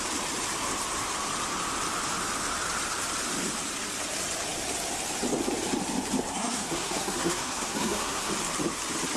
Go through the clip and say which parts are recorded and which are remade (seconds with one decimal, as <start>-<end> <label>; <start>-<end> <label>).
0.0-6.3 recorded; 6.3-8.3 remade; 8.3-9.2 recorded